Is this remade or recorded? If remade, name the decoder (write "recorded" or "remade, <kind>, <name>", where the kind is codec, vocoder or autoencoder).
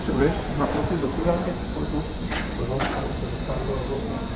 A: remade, vocoder, Vocos